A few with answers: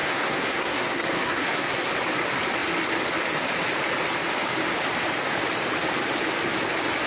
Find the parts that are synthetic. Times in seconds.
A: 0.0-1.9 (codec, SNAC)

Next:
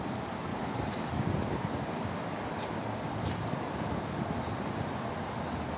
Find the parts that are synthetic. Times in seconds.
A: 0.5-4.0 (vocoder, BigVGAN v2)

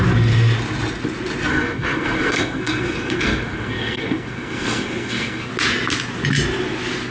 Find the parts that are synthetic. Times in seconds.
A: 1.5-5.5 (codec, SNAC)

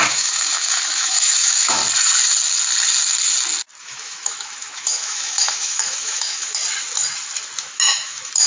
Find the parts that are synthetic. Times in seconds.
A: 0.0-1.8 (autoencoder, DAC-VAE); 3.8-6.6; 7.6-8.5

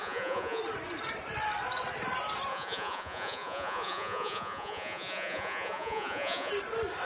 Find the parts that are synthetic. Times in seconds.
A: 0.0-0.6 (vocoder, Vocos); 2.5-6.5

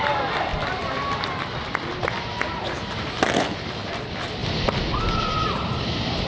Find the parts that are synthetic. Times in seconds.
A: none

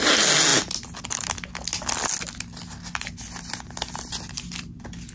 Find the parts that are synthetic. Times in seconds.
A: none